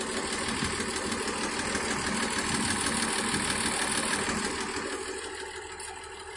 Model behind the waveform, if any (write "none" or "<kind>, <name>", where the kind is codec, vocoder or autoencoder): none